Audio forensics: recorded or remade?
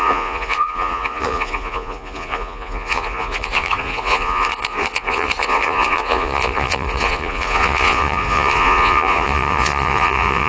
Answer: remade